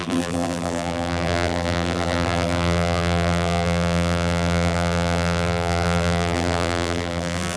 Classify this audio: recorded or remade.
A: remade